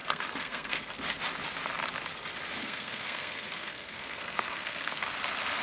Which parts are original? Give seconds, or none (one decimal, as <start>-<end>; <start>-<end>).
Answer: 0.9-2.6; 5.0-5.6